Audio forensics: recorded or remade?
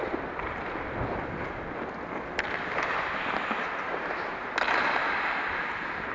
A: recorded